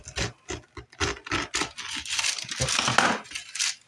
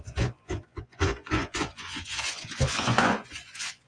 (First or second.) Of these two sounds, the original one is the first